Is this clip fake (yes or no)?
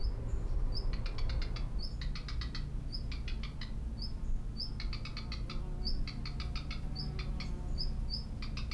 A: no